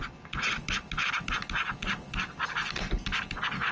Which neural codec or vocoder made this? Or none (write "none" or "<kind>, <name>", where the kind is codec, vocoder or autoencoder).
none